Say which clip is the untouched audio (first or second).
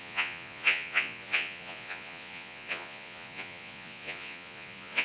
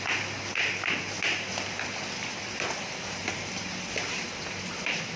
second